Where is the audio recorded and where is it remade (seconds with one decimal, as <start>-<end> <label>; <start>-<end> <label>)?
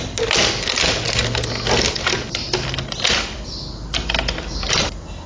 0.0-5.3 recorded